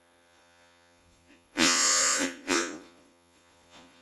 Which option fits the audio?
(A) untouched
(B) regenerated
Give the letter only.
B